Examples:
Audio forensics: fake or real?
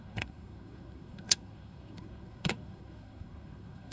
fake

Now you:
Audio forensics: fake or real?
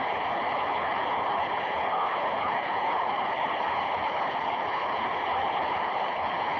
fake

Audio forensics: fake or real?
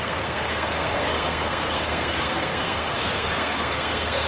fake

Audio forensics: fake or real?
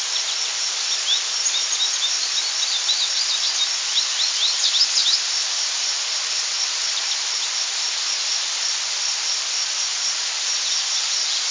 real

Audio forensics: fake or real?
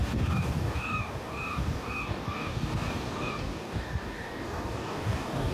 fake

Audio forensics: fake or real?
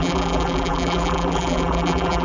fake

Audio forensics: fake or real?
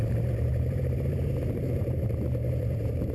fake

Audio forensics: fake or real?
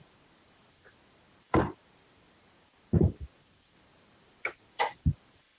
fake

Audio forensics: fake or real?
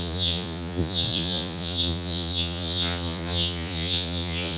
fake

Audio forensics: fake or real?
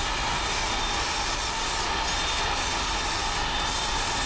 real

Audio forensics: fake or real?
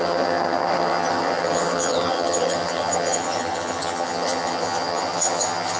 fake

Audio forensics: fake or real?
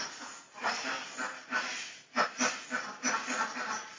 real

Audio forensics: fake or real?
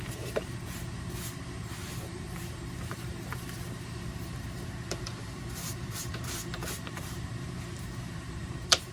fake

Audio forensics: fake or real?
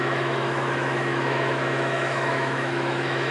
fake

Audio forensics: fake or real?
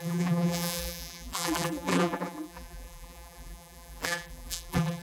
fake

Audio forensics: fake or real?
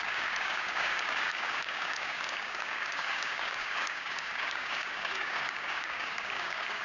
fake